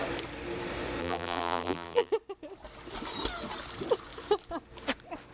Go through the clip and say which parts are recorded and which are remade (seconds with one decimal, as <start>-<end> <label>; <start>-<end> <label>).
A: 0.0-1.0 recorded; 1.0-2.1 remade; 2.1-5.3 recorded